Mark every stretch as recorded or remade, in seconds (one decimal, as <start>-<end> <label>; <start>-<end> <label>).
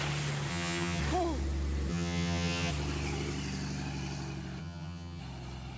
0.0-0.5 recorded; 0.5-1.0 remade; 1.0-1.9 recorded; 1.9-2.7 remade; 2.7-4.6 recorded; 4.6-5.2 remade; 5.2-5.8 recorded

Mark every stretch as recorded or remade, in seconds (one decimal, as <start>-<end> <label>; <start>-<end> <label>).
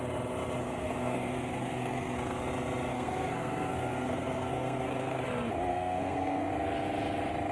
0.0-0.6 recorded; 0.6-2.4 remade; 2.4-2.9 recorded; 2.9-5.2 remade; 5.2-5.7 recorded; 5.7-6.5 remade; 6.5-7.5 recorded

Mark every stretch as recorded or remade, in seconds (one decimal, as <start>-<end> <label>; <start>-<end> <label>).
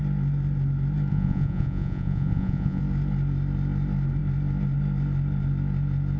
0.0-1.1 recorded; 1.1-2.8 remade; 2.8-6.2 recorded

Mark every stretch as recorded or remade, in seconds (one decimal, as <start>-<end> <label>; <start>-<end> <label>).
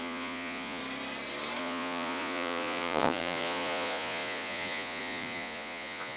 0.0-0.8 remade; 0.8-1.6 recorded; 1.6-6.2 remade